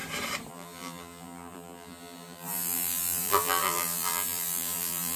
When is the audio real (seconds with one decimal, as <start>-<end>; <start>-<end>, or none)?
0.0-0.5